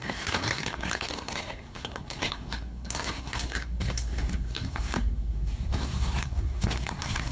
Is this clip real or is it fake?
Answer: fake